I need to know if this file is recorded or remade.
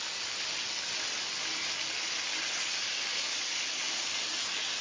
recorded